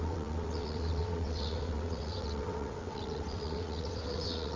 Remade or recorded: remade